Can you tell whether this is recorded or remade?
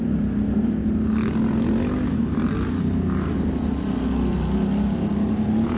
recorded